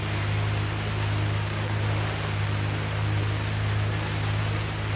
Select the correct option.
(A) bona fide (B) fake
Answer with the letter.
A